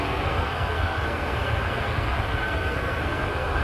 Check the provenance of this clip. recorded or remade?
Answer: remade